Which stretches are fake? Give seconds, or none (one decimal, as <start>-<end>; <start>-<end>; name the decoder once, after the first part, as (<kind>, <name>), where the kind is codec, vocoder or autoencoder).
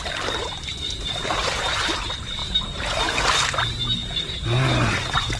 0.7-1.9 (vocoder, BigVGAN v2); 2.4-3.2